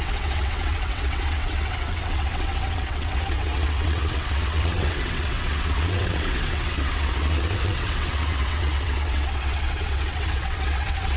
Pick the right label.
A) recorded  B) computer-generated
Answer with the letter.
B